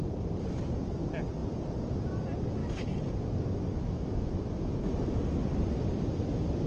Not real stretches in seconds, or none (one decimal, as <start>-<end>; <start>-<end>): 2.6-3.1; 3.7-5.2